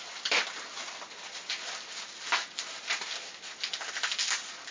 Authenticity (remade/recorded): recorded